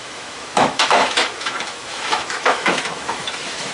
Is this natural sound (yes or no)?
no